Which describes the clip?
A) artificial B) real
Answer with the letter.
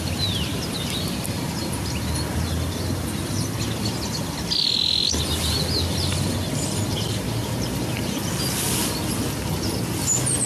B